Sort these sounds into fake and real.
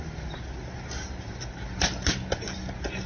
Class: real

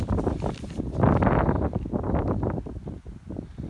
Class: real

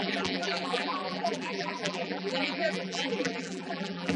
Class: fake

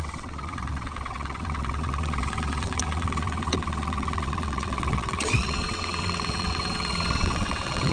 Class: fake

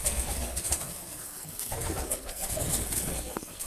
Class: fake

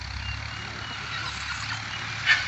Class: real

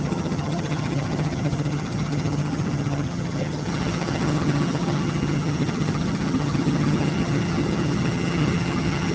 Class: fake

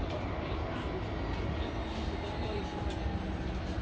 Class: real